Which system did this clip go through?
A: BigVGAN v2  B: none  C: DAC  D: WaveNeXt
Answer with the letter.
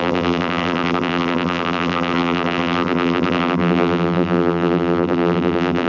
A